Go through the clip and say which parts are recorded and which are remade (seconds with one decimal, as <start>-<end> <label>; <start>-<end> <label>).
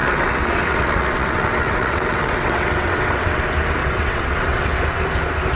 0.0-3.4 remade; 3.4-3.8 recorded; 3.8-4.8 remade; 4.8-5.6 recorded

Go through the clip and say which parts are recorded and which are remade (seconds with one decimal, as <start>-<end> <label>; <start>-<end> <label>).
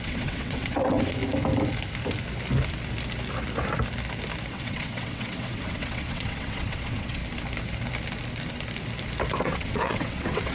0.0-1.2 remade; 1.2-4.5 recorded; 4.5-7.2 remade; 7.2-9.4 recorded; 9.4-10.5 remade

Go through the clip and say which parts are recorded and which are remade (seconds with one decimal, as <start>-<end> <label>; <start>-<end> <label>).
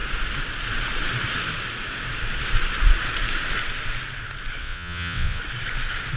0.0-4.6 recorded; 4.6-5.4 remade; 5.4-6.2 recorded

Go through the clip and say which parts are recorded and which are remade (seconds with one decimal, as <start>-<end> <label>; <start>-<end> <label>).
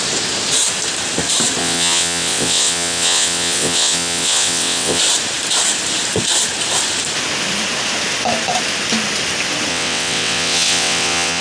0.0-1.6 recorded; 1.6-5.0 remade; 5.0-9.7 recorded; 9.7-11.4 remade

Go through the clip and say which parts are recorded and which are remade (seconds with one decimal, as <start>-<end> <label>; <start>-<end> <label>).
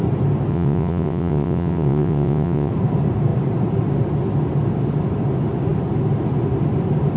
0.0-0.5 recorded; 0.5-2.7 remade; 2.7-7.2 recorded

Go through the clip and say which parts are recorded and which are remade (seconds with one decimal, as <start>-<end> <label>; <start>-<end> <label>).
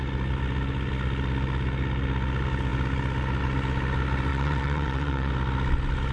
0.0-4.3 recorded; 4.3-5.3 remade; 5.3-6.1 recorded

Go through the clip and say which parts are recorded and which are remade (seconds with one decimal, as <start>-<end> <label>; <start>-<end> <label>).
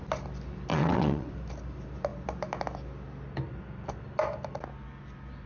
0.0-0.7 recorded; 0.7-1.3 remade; 1.3-5.5 recorded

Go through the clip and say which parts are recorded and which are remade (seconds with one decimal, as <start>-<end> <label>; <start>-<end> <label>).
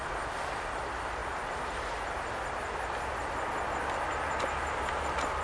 0.0-5.4 recorded